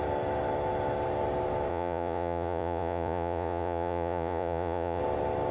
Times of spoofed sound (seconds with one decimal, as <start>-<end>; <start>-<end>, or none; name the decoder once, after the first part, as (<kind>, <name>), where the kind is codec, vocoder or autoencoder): 1.7-5.0 (vocoder, Vocos)